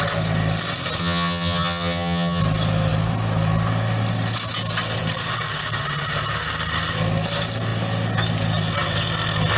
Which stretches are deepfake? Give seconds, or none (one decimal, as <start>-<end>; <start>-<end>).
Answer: 1.0-2.4